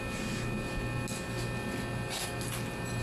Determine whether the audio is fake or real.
real